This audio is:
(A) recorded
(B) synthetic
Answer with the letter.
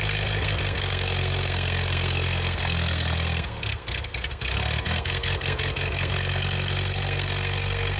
B